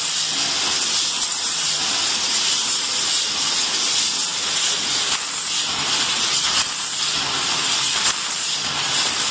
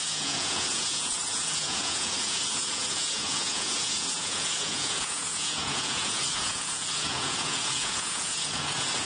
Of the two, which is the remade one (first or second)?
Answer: second